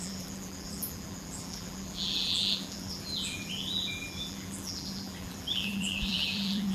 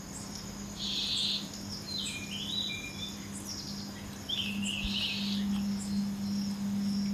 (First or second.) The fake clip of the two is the first